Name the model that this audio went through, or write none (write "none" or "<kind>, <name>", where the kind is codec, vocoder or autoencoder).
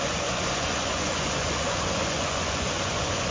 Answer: vocoder, Vocos